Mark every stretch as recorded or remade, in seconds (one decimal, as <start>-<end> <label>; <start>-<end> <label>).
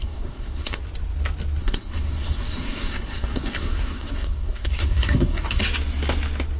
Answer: 0.0-0.8 remade; 0.8-1.6 recorded; 1.6-5.6 remade; 5.6-6.6 recorded